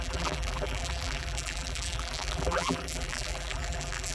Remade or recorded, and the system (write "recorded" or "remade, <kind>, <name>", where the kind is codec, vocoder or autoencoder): remade, vocoder, BigVGAN v2